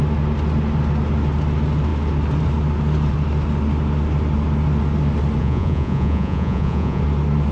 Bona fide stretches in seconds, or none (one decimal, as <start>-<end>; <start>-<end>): 0.0-5.4; 7.0-7.5